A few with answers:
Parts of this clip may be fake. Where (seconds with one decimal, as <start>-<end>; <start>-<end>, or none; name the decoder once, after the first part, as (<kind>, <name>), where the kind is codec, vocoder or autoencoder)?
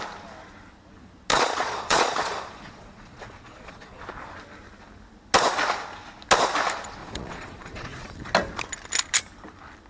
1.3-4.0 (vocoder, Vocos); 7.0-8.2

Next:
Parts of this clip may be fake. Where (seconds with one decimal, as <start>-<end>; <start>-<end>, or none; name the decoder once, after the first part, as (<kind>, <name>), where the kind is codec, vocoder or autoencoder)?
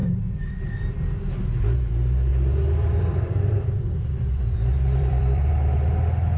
0.0-1.3 (vocoder, BigVGAN v2); 2.3-5.5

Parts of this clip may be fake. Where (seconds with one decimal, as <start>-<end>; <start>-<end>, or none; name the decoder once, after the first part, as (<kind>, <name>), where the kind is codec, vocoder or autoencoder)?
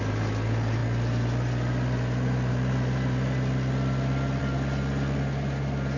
none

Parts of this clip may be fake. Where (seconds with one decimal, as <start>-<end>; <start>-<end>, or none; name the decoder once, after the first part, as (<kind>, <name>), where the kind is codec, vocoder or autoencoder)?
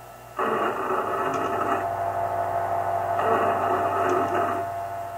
none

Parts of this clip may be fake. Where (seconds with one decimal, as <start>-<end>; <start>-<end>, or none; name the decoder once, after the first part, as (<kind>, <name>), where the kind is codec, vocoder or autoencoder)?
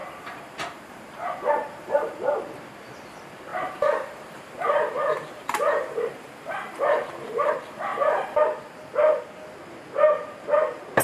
0.0-2.2 (vocoder, BigVGAN v2); 3.5-7.5; 7.9-9.2